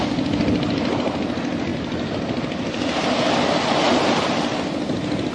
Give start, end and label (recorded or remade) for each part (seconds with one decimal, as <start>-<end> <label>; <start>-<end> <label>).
0.0-5.3 recorded